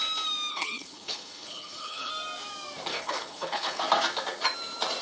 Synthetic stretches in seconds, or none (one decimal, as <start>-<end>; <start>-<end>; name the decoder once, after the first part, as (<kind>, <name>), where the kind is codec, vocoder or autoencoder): 0.5-2.1 (codec, HILCodec); 2.9-3.8